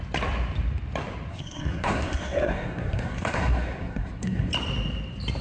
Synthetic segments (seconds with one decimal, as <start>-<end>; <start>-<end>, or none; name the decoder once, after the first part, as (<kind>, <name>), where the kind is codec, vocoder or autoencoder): 1.3-4.5 (codec, SNAC)